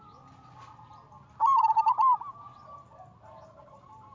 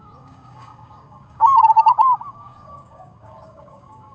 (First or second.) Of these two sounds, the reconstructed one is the second